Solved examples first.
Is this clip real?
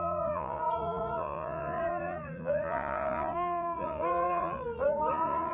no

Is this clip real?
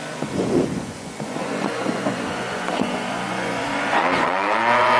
no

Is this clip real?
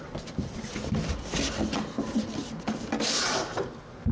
yes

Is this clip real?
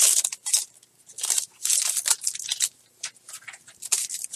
yes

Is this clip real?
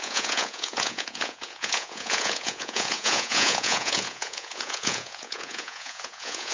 no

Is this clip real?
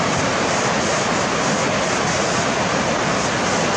yes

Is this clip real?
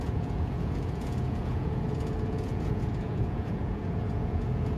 no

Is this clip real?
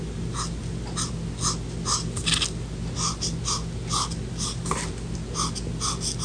yes